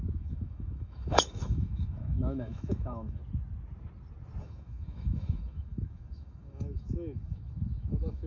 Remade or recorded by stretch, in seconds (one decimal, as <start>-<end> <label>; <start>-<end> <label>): 0.0-3.2 remade; 3.2-4.4 recorded; 4.4-8.3 remade